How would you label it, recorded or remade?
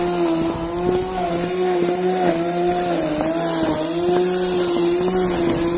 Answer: recorded